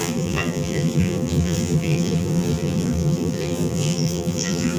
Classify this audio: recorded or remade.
remade